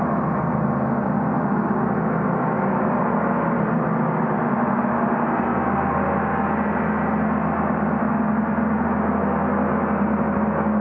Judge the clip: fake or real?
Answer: real